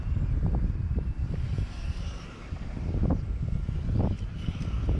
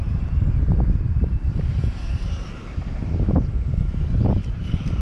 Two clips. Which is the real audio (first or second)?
first